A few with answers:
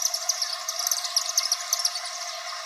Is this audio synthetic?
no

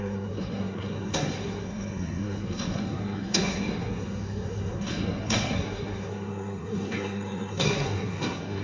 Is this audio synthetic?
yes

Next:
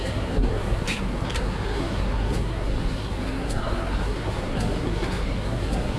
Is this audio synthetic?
yes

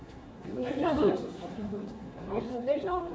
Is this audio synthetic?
yes